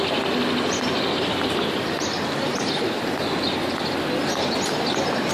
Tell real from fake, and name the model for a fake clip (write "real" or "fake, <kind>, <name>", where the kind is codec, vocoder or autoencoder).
real